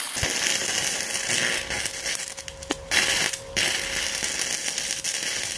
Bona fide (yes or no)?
yes